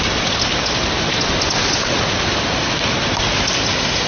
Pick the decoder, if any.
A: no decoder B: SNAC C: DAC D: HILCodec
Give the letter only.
A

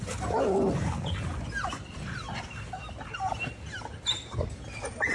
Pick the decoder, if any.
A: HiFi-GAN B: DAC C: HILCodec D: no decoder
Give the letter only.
D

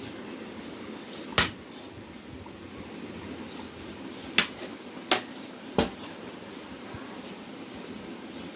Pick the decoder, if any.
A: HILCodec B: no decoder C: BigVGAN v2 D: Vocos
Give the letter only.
B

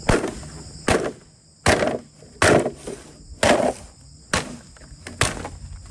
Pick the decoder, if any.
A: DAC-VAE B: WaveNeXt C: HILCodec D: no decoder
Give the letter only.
D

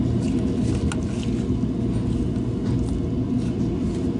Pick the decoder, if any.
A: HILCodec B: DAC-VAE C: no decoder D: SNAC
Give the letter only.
C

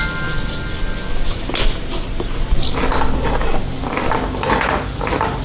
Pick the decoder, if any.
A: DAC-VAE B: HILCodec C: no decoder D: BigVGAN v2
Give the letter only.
C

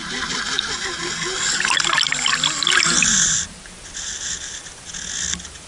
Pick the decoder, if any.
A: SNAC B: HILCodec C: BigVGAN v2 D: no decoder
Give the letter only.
D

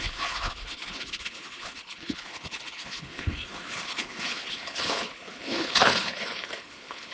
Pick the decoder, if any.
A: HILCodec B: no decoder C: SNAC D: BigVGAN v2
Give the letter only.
A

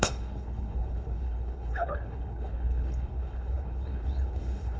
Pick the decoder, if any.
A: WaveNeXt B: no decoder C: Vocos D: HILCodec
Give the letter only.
D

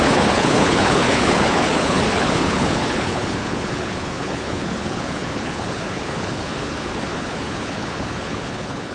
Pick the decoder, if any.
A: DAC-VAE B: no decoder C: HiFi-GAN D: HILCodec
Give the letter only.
D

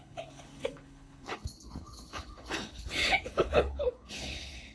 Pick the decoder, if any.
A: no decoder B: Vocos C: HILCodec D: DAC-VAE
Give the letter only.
C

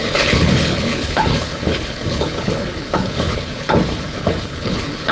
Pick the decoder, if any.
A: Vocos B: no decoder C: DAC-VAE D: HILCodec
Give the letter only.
D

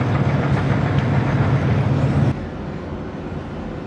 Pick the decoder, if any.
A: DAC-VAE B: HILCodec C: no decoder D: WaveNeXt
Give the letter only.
C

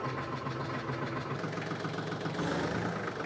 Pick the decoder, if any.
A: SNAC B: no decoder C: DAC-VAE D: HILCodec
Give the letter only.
B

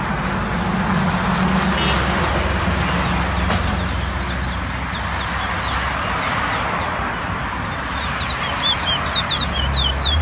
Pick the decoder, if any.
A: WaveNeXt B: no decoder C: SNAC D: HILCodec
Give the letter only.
B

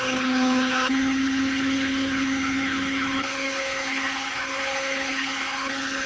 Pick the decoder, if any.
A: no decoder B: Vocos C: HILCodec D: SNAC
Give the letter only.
C